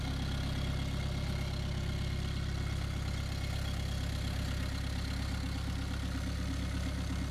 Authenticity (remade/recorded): recorded